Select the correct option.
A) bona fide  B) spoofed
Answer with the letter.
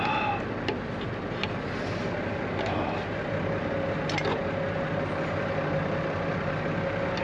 A